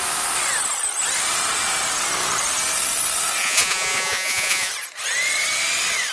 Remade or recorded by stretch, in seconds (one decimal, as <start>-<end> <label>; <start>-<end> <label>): 0.0-3.4 recorded; 3.4-4.7 remade; 4.7-6.1 recorded